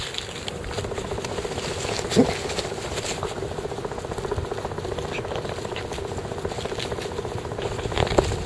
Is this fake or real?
real